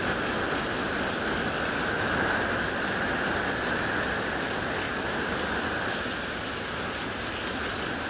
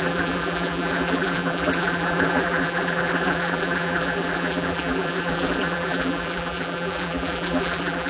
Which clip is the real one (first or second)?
first